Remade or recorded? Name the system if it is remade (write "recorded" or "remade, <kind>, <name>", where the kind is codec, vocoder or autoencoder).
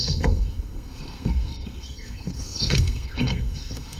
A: remade, codec, SNAC